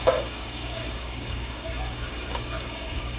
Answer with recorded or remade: remade